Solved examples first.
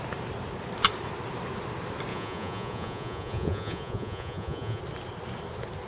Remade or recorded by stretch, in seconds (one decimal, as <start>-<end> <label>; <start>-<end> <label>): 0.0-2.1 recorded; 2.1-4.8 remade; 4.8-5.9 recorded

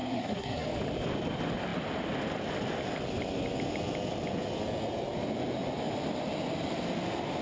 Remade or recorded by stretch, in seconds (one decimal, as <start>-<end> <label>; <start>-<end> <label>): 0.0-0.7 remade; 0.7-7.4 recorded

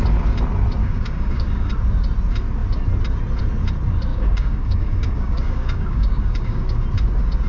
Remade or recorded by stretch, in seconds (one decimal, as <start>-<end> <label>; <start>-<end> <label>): 0.0-0.8 recorded; 0.8-1.7 remade; 1.7-4.1 recorded; 4.1-6.8 remade; 6.8-7.5 recorded